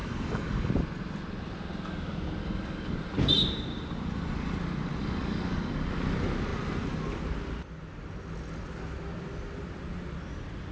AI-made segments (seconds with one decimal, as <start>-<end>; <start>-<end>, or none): 0.0-0.7; 2.4-3.0; 5.0-6.0